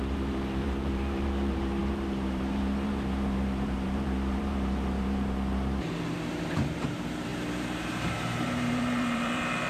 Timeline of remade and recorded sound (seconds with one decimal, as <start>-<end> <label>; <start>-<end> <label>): 0.0-9.7 remade